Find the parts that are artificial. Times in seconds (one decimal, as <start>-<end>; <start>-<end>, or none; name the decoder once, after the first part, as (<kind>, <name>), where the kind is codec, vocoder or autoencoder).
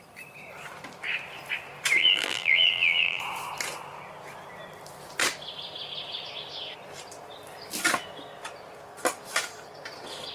2.0-3.2 (vocoder, BigVGAN v2)